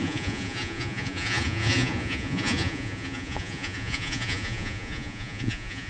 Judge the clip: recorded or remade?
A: remade